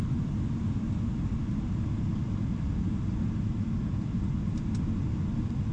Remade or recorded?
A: recorded